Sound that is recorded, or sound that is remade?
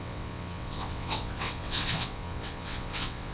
remade